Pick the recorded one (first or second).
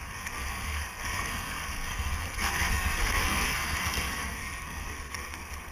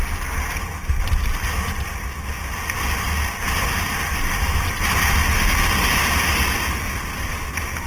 second